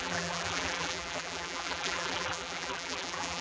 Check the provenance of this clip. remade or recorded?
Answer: remade